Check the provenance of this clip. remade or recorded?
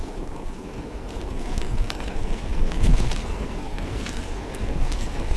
remade